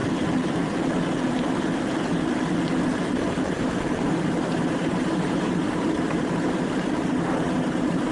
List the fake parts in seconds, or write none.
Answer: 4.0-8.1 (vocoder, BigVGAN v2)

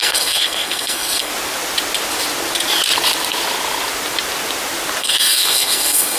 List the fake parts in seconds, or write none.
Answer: 0.0-1.3 (codec, SNAC); 5.0-6.2

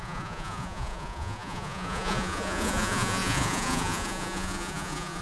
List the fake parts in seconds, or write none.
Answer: 0.0-5.2 (vocoder, Vocos)

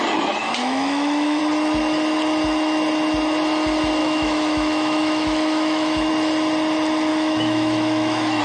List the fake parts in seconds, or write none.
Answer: 0.6-1.4 (autoencoder, DAC-VAE); 4.0-6.1; 7.1-8.4

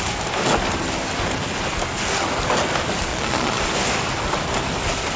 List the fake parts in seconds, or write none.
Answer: 3.1-3.6 (vocoder, Vocos)

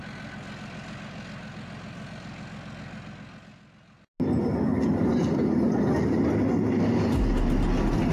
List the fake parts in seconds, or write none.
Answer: none